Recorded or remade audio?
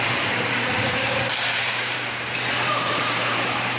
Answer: remade